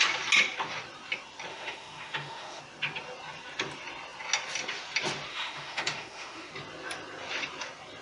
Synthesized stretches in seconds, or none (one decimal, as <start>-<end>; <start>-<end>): 1.5-2.6; 5.3-6.5